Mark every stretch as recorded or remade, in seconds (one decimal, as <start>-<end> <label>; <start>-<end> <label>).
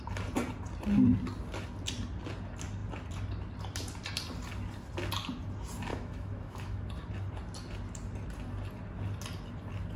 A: 0.0-5.9 recorded; 5.9-6.9 remade; 6.9-10.0 recorded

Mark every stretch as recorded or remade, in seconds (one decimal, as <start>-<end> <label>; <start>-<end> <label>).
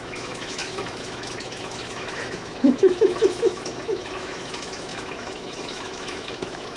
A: 0.0-6.8 remade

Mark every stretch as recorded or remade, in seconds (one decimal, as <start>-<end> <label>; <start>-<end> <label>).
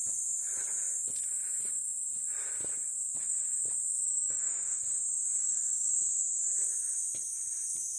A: 0.0-3.9 recorded; 3.9-4.8 remade; 4.8-5.4 recorded; 5.4-5.9 remade; 5.9-8.0 recorded